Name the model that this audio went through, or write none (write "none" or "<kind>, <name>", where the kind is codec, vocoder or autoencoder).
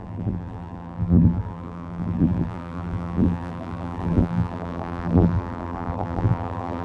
vocoder, BigVGAN v2